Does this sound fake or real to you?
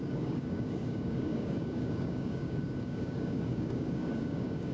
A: fake